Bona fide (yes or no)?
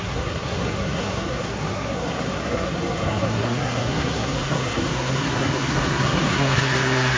no